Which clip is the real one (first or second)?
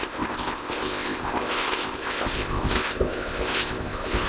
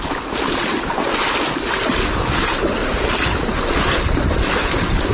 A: second